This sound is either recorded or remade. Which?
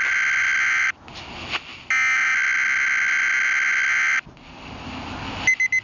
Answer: recorded